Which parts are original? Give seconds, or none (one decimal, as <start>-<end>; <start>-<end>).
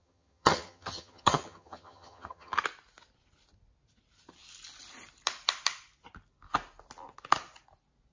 2.6-8.1